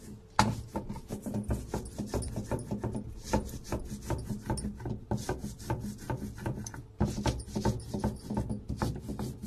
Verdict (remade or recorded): recorded